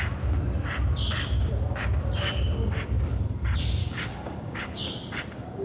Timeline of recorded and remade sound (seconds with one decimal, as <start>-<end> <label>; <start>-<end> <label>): 0.0-3.8 recorded; 3.8-4.9 remade; 4.9-5.6 recorded